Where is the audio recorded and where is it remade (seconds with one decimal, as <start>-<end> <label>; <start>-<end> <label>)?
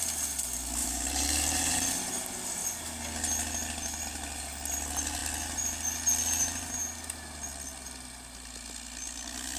0.0-0.8 recorded; 0.8-1.8 remade; 1.8-9.6 recorded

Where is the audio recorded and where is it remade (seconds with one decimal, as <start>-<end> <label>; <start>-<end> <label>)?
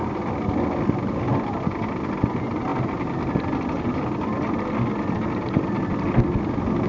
0.0-6.9 recorded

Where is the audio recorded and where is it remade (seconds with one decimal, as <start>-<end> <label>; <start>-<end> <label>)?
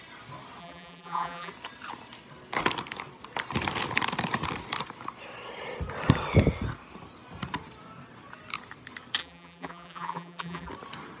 0.0-0.6 recorded; 0.6-1.5 remade; 1.5-9.2 recorded; 9.2-10.7 remade; 10.7-11.2 recorded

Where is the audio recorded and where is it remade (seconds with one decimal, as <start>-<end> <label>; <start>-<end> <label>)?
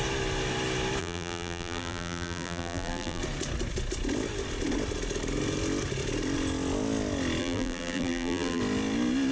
0.0-1.0 recorded; 1.0-3.2 remade; 3.2-7.4 recorded; 7.4-8.6 remade; 8.6-9.3 recorded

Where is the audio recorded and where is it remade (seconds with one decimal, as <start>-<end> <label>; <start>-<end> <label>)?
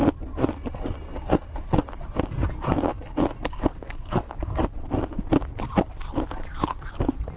0.0-7.4 recorded